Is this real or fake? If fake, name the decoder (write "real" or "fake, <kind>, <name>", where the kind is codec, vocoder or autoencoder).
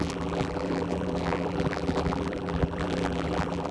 fake, vocoder, BigVGAN v2